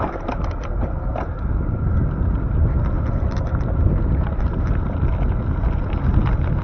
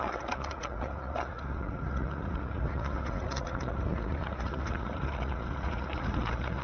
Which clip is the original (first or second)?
first